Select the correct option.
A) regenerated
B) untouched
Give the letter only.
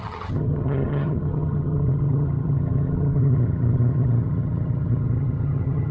A